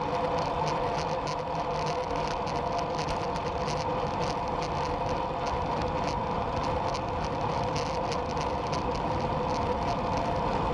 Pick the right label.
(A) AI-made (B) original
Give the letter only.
B